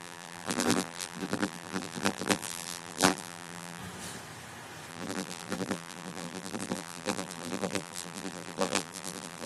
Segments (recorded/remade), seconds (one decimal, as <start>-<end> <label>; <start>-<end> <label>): 0.0-3.8 remade; 3.8-4.9 recorded; 4.9-9.5 remade